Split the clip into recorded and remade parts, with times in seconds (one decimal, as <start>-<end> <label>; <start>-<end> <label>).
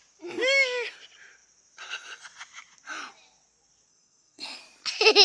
0.0-3.9 recorded; 3.9-4.6 remade; 4.6-5.2 recorded